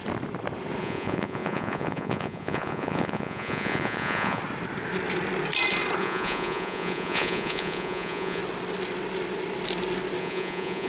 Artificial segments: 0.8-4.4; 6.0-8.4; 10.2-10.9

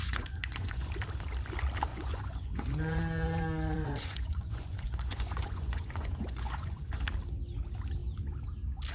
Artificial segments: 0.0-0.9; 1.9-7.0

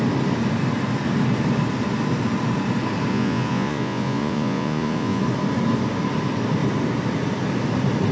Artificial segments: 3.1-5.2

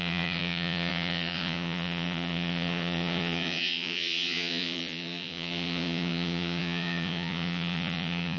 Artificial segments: 0.0-8.4

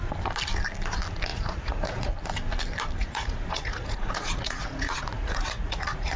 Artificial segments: 1.3-2.1; 3.0-6.2

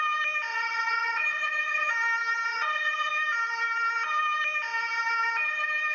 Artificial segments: 0.5-1.9; 2.5-3.1

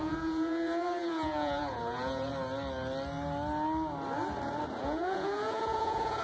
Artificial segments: 0.0-2.3; 4.8-6.2